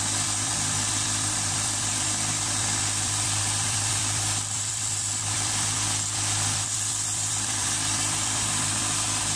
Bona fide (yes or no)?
no